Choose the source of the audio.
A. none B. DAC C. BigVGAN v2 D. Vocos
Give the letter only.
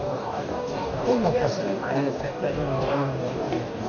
B